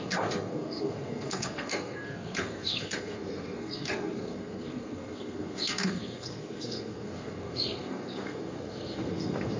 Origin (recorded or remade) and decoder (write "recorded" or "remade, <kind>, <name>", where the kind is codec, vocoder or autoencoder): remade, codec, SNAC